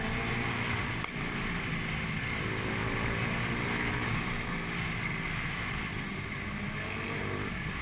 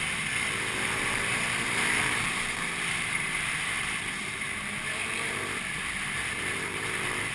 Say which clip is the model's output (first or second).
second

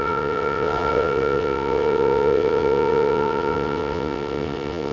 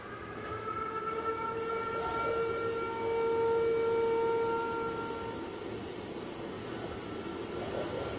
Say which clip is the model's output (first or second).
first